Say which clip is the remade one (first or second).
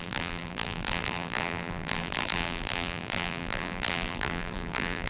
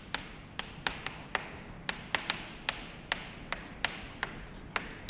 first